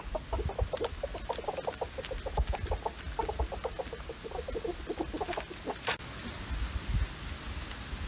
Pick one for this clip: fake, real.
real